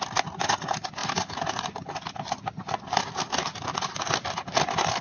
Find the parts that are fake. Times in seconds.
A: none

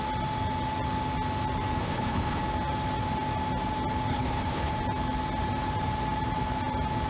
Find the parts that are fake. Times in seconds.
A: 1.8-2.4; 4.1-4.7

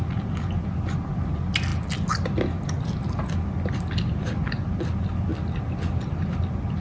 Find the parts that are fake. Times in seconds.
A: none

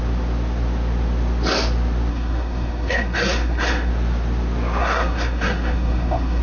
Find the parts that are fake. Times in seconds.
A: 2.1-3.9; 4.8-6.4

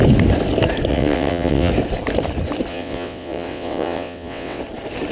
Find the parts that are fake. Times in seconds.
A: 0.9-1.7; 2.7-4.6

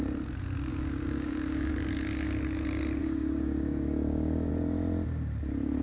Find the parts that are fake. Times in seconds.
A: 0.7-1.7; 3.0-4.5

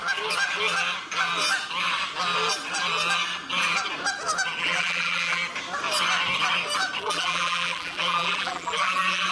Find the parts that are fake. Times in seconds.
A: 4.6-5.4; 7.0-9.3